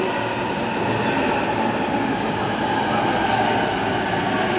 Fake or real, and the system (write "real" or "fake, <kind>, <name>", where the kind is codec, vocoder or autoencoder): real